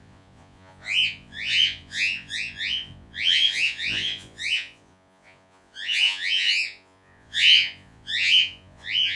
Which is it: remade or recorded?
remade